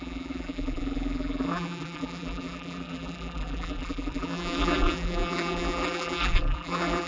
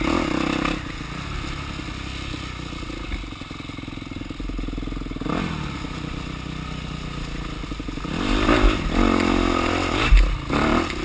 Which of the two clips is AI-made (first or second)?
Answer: first